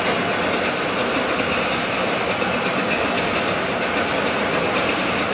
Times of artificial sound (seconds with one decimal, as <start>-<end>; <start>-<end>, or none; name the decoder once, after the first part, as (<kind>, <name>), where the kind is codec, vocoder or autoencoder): none